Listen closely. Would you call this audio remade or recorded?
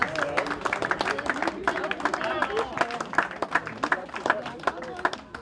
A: recorded